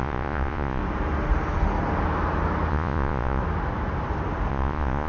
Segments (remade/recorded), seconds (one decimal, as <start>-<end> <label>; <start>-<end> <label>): 0.0-0.8 remade; 0.8-2.7 recorded; 2.7-3.4 remade; 3.4-4.5 recorded; 4.5-5.1 remade